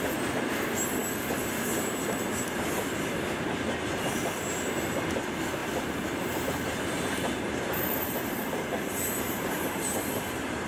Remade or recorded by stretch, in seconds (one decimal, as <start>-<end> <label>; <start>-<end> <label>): 0.0-5.6 recorded; 5.6-10.7 remade